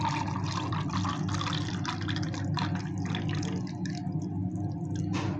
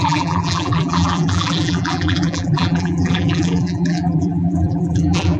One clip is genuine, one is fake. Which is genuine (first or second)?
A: first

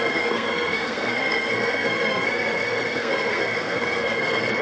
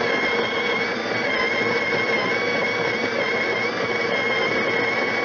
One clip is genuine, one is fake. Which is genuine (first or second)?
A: second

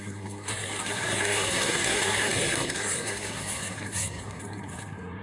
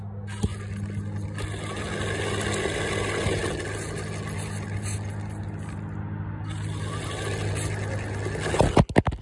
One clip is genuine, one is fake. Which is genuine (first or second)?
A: second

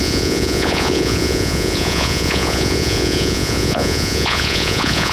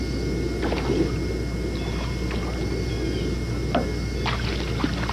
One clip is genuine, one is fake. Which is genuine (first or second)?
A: second